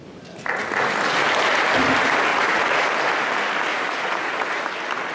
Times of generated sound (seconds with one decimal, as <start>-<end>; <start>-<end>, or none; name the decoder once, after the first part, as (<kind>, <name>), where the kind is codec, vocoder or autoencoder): 2.3-2.9 (vocoder, Vocos); 3.7-4.6